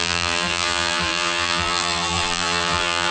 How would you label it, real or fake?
fake